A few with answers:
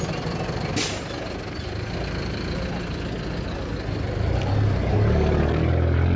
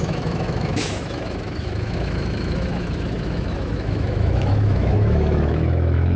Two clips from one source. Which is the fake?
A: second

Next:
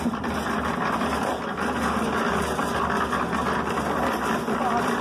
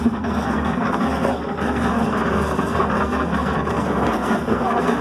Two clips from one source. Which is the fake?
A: second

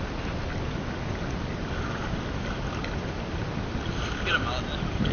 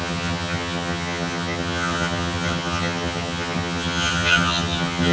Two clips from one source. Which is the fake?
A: second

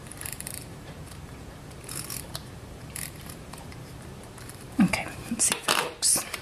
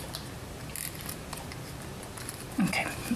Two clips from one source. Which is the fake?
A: first